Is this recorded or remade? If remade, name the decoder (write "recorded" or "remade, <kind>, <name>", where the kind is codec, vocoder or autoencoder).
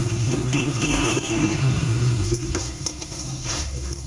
remade, codec, SNAC